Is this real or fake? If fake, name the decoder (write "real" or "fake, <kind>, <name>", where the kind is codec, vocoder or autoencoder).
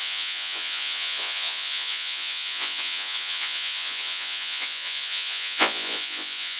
fake, vocoder, Vocos